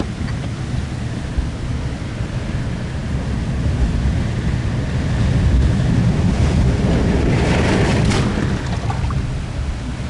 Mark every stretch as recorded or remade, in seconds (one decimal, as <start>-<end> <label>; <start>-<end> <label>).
0.0-10.1 recorded